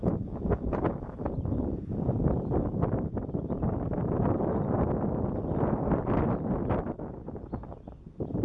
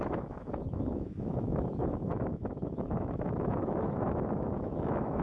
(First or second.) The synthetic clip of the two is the second